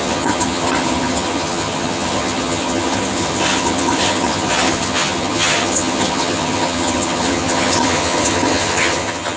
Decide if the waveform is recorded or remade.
remade